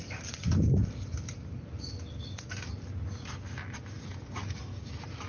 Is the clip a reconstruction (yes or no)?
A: no